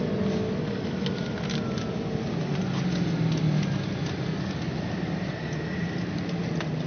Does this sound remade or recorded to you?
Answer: recorded